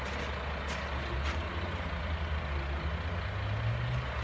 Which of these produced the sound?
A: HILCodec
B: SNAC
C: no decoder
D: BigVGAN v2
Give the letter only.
C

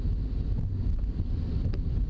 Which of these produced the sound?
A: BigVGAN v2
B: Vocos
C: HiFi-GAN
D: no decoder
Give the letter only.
D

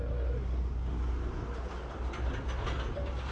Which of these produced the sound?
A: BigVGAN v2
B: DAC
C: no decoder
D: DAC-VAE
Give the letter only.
C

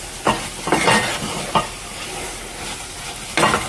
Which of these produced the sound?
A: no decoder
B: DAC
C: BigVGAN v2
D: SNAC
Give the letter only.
C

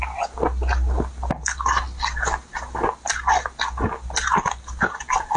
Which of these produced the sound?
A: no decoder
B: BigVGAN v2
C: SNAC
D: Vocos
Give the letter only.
A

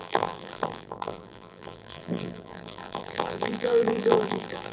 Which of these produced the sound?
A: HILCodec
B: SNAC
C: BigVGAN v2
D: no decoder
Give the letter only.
C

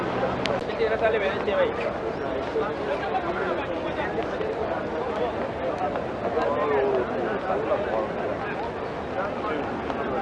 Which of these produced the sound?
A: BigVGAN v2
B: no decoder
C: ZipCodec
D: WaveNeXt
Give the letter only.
B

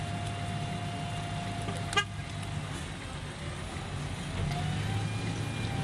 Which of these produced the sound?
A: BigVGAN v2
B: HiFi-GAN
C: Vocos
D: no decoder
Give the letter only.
D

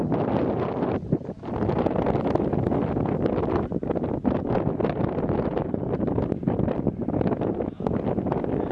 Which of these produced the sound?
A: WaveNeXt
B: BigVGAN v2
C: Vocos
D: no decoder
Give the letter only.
D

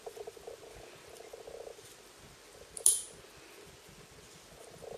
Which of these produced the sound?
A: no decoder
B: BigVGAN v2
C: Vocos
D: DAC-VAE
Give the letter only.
A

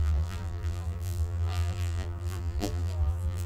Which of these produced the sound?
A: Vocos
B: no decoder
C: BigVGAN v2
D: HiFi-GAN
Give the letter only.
C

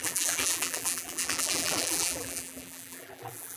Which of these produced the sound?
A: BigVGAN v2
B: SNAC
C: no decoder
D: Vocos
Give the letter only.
A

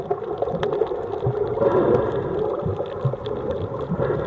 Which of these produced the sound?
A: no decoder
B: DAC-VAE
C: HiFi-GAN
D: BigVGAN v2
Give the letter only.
A